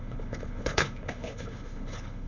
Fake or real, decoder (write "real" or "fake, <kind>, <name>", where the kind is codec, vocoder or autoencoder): fake, codec, HILCodec